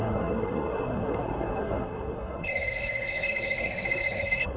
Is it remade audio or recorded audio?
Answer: remade